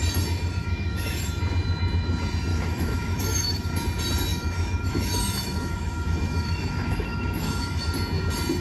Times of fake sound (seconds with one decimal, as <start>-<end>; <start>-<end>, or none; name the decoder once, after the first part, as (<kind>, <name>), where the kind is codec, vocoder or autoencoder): 0.6-1.4 (autoencoder, DAC-VAE); 2.5-3.7; 4.3-7.8